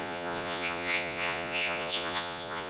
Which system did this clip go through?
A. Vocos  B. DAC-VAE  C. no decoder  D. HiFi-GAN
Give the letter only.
A